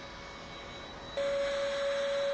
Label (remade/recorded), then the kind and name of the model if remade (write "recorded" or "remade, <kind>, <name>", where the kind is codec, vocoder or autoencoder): recorded